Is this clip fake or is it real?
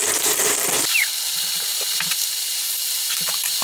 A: fake